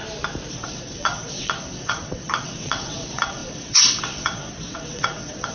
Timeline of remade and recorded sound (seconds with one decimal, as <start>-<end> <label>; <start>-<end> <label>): 0.0-0.5 recorded; 0.5-5.5 remade

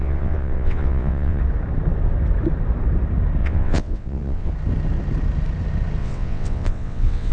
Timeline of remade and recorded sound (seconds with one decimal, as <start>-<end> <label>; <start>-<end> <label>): 0.0-1.4 remade; 1.4-3.4 recorded; 3.4-4.5 remade; 4.5-6.0 recorded; 6.0-7.3 remade

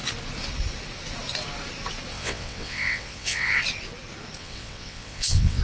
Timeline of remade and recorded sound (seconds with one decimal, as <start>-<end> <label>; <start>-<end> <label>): 0.0-2.1 recorded; 2.1-3.6 remade; 3.6-4.4 recorded; 4.4-5.6 remade